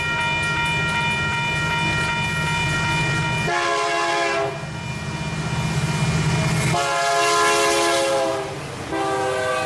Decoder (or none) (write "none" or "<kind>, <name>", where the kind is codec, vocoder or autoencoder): none